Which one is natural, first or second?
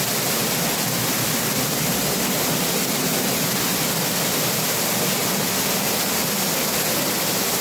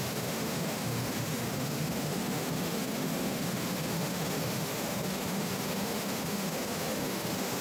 first